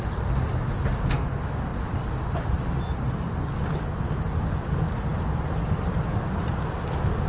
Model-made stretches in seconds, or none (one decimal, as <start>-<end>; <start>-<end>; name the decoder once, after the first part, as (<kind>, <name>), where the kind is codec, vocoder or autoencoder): none